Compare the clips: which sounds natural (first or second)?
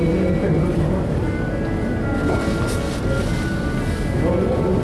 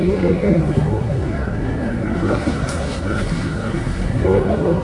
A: first